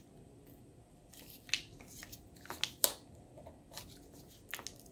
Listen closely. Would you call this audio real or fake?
real